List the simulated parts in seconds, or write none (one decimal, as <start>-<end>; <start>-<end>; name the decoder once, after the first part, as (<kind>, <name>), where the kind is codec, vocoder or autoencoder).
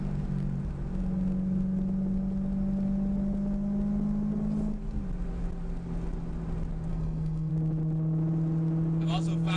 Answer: 6.9-7.5 (codec, SNAC)